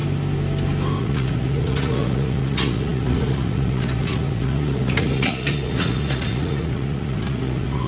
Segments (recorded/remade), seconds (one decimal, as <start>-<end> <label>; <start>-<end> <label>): 0.0-1.0 recorded; 1.0-7.9 remade